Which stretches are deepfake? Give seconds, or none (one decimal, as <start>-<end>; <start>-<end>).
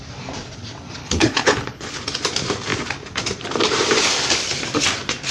1.0-2.0